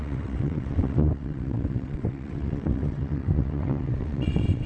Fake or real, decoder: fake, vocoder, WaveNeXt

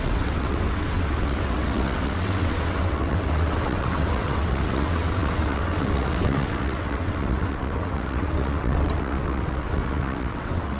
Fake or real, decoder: fake, vocoder, WaveNeXt